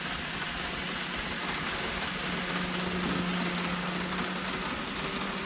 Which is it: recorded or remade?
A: recorded